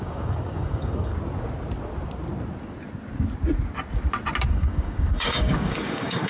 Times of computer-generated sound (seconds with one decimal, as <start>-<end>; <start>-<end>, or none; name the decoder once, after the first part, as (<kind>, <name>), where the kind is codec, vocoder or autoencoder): 0.0-1.1 (codec, DAC); 4.5-6.3